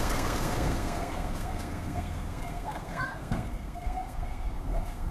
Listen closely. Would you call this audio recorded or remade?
remade